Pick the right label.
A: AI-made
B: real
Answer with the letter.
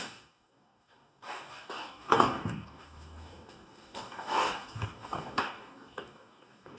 A